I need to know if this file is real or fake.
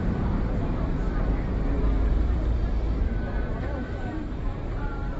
fake